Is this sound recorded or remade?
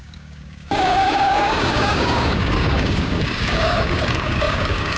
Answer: remade